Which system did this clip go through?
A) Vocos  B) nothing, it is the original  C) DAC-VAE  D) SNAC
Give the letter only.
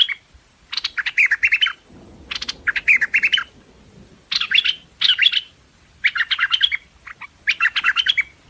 B